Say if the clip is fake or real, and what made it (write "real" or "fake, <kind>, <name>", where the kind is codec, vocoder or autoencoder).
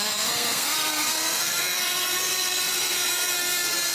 fake, codec, SNAC